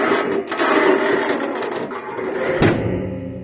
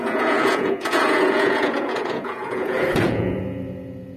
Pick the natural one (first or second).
first